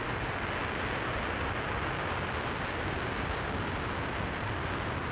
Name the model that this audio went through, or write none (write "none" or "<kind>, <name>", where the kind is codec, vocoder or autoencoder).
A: none